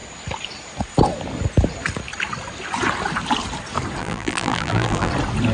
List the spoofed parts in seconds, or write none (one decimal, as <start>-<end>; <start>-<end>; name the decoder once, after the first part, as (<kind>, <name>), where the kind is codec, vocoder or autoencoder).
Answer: 4.0-5.1 (vocoder, BigVGAN v2)